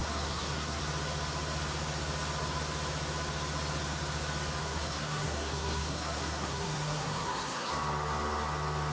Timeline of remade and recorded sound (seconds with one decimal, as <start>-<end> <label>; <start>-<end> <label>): 0.0-0.8 remade; 0.8-4.6 recorded; 4.6-7.7 remade; 7.7-8.9 recorded